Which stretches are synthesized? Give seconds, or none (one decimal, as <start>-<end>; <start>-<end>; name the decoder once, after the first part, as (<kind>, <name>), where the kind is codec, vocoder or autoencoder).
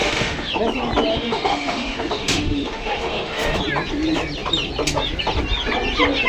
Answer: 0.0-0.5 (autoencoder, DAC-VAE); 1.1-3.6